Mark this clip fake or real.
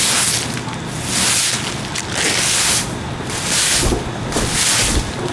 real